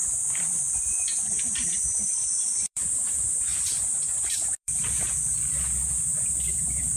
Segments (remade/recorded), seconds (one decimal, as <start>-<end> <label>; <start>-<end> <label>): 0.0-0.9 remade; 0.9-1.8 recorded; 1.8-7.0 remade